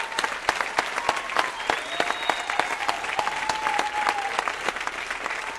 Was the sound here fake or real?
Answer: real